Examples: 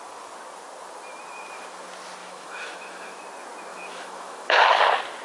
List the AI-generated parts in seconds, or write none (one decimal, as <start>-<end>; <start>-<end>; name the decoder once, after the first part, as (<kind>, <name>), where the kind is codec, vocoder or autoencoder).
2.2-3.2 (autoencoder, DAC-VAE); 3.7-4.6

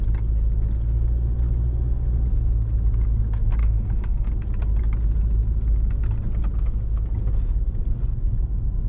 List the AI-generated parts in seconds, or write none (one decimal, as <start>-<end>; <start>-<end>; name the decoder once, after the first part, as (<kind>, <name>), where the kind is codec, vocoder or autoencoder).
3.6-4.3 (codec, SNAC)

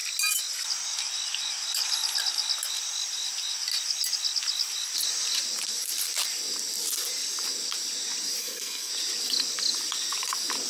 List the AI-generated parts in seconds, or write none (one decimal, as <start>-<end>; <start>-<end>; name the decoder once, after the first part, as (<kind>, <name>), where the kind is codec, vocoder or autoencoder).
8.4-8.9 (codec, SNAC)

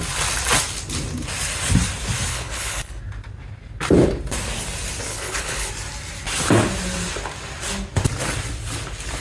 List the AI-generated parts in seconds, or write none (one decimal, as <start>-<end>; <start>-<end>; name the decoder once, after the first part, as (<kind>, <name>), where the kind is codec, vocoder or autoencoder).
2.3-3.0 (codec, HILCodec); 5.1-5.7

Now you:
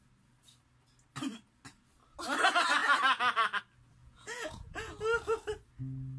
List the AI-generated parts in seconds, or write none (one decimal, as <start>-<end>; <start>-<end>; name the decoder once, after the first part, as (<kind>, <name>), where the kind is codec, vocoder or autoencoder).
4.0-4.9 (vocoder, Vocos)

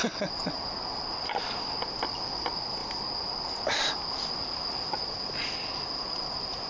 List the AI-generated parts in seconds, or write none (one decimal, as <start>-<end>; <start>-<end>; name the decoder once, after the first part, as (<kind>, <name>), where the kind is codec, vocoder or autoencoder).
none

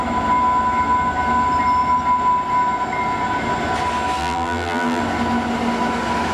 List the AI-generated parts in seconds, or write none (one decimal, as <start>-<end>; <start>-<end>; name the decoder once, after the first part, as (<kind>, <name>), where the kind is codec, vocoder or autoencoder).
4.2-5.0 (vocoder, BigVGAN v2)

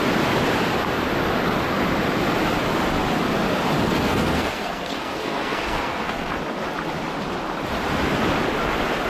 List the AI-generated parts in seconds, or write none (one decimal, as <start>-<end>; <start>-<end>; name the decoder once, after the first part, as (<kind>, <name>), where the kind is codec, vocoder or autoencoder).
3.9-6.4 (codec, SNAC)